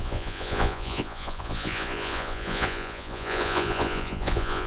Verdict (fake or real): fake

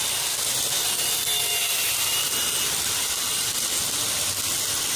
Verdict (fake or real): fake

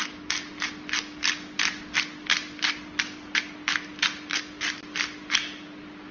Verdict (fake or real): real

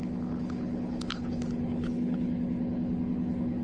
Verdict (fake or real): fake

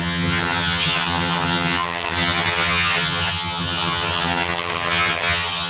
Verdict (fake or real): fake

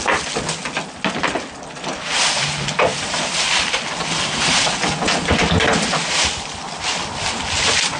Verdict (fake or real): real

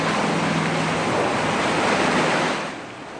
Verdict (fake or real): real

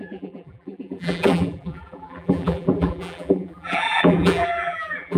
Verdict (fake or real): fake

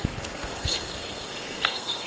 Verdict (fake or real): fake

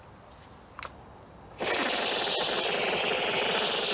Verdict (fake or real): real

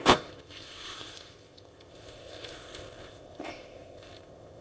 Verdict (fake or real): fake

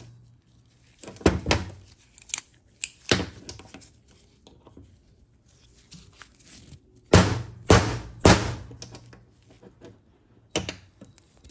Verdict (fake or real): real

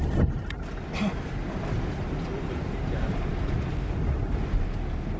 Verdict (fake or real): real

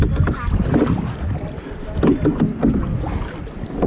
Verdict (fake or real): real